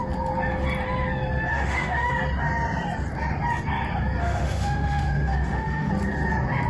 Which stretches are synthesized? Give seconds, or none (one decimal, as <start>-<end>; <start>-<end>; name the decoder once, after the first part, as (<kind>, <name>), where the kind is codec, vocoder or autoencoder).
1.5-2.1 (autoencoder, DAC-VAE); 4.2-5.9